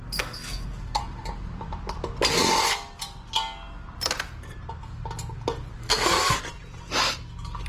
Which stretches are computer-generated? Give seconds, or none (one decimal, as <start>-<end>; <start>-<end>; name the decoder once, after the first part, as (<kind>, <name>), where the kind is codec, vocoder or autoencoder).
0.0-1.0 (codec, SNAC); 5.8-6.4